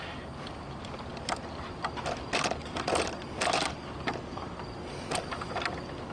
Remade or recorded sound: recorded